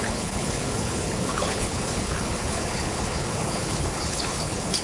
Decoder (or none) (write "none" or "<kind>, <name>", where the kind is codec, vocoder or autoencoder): codec, HILCodec